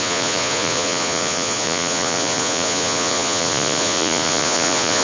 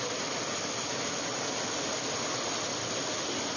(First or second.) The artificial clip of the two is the first